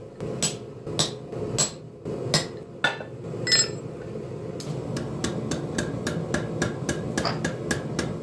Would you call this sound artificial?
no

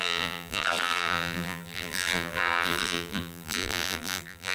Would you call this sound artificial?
yes